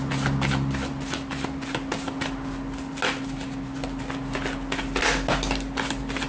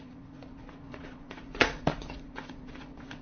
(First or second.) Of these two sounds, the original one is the first